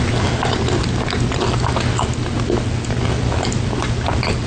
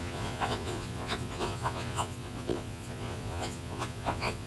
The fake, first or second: second